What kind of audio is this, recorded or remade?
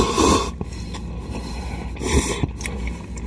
recorded